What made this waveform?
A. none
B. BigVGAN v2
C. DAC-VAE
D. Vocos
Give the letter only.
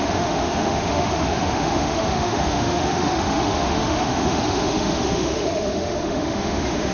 C